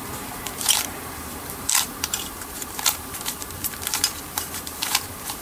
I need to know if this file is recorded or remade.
remade